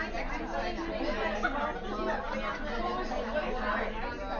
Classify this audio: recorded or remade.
recorded